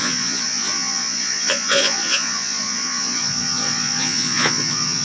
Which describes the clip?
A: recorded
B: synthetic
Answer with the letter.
B